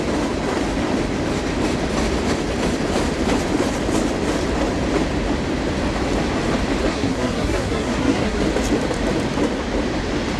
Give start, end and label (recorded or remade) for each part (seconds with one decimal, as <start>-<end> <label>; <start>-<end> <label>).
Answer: 0.0-6.9 recorded; 6.9-8.4 remade; 8.4-10.4 recorded